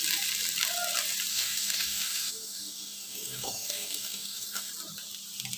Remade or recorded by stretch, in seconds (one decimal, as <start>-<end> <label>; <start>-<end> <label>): 0.0-1.3 recorded; 1.3-4.7 remade; 4.7-5.6 recorded